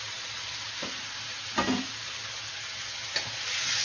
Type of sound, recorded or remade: recorded